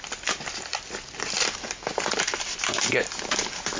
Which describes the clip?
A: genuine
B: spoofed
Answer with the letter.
B